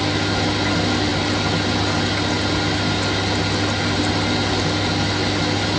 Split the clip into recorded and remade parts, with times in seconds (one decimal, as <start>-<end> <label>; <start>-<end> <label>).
0.0-5.8 recorded